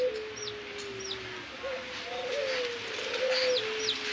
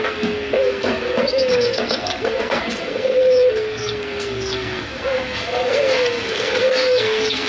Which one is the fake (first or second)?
second